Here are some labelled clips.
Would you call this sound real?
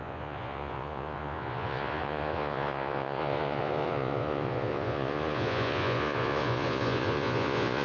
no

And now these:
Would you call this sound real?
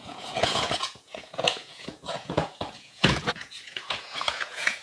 no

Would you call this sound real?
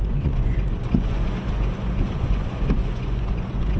no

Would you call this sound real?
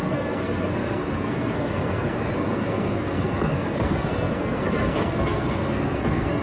no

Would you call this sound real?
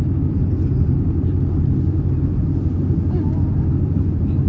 yes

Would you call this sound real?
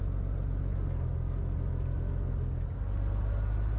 yes